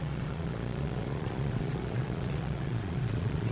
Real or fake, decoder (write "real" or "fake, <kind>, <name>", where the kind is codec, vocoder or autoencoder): fake, vocoder, Vocos